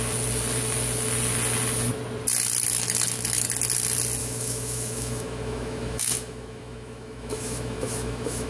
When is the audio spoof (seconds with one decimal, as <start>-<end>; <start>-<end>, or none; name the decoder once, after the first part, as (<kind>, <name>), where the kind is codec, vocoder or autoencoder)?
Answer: 4.2-8.5 (autoencoder, DAC-VAE)